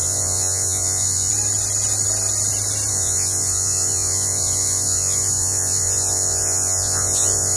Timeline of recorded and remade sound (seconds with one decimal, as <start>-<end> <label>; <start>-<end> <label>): 0.0-1.3 remade; 1.3-2.9 recorded; 2.9-7.6 remade